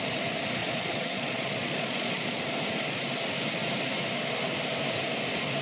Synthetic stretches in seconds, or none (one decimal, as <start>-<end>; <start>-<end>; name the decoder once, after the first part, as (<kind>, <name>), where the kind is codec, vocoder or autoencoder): 0.6-2.4 (vocoder, Vocos)